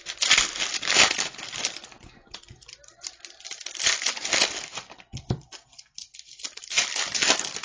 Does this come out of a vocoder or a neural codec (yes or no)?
no